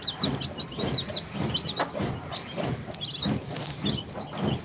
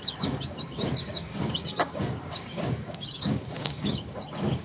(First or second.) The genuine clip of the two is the first